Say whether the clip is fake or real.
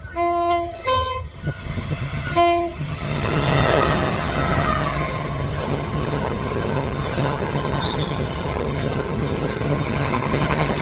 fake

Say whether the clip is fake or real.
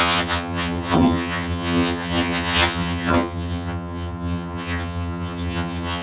fake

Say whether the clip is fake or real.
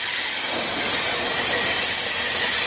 real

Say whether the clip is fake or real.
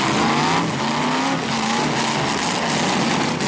real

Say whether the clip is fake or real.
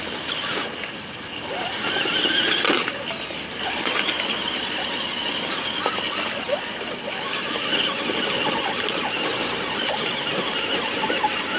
real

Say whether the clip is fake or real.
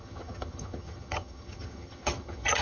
fake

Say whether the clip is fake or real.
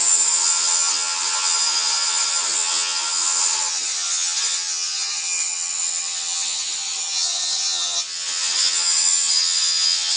fake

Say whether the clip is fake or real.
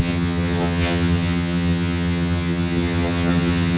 fake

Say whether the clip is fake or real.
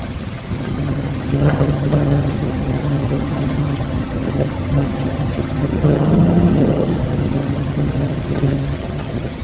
fake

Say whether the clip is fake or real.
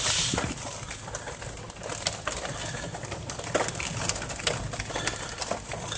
real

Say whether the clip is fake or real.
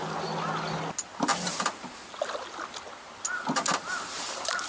real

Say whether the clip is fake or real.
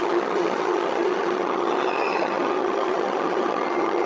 fake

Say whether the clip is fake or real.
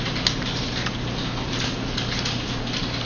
real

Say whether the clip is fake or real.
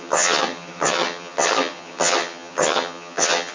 fake